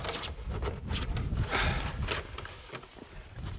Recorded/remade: recorded